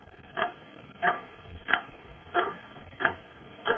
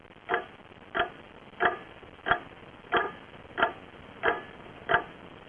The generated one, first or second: first